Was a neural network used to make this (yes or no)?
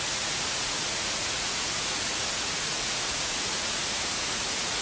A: yes